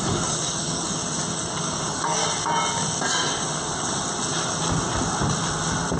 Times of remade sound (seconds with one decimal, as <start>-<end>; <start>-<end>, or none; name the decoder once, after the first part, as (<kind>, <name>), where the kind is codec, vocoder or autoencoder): 0.0-1.0 (codec, DAC); 1.6-2.2